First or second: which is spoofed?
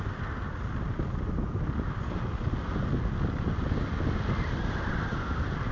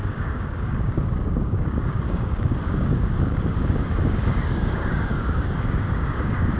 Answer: second